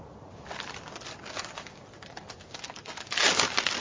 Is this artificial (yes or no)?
no